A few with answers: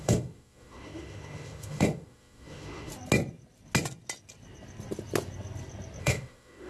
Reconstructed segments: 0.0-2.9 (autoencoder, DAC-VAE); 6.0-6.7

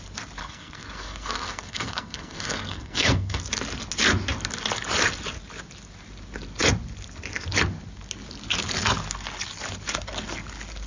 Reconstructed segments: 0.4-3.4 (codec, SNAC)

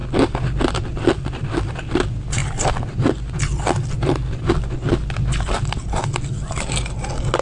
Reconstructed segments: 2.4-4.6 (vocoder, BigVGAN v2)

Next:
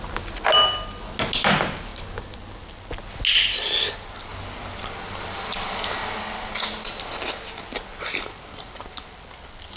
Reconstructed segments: none

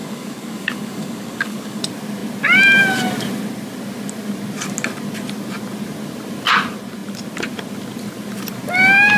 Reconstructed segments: 0.0-1.8 (codec, DAC)

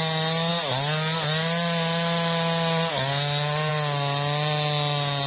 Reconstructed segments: none

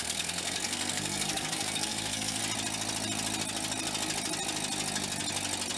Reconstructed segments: 0.0-2.4 (codec, SNAC)

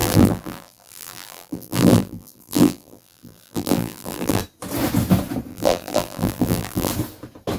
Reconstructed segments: 0.0-4.4 (vocoder, BigVGAN v2); 5.5-6.9